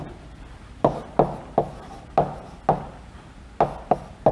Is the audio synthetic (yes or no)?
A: no